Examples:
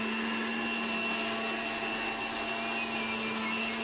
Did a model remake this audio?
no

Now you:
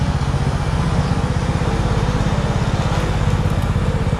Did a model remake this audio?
no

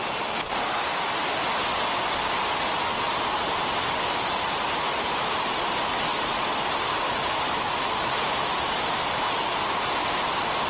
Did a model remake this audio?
no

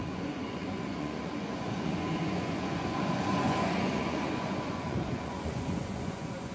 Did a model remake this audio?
yes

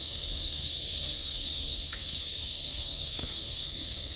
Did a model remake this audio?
yes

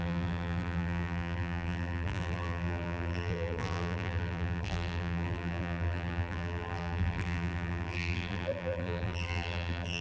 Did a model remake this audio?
yes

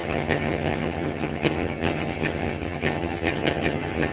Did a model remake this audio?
yes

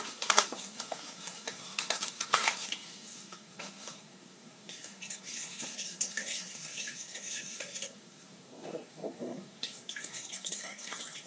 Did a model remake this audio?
yes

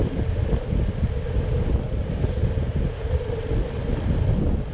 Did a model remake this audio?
no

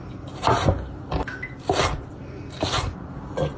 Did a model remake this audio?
no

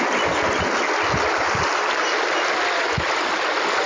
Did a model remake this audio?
no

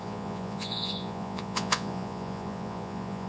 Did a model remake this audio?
yes